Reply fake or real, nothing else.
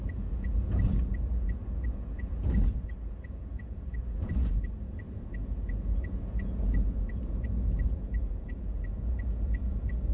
fake